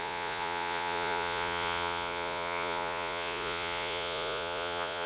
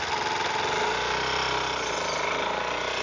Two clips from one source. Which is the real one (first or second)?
second